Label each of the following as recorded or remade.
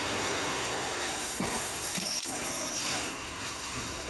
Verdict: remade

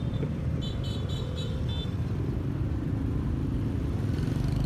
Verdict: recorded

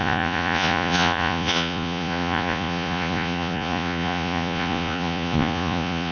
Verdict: remade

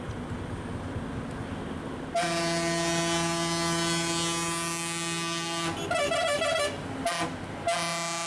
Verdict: recorded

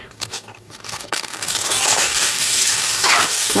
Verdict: remade